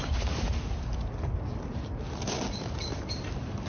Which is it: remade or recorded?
recorded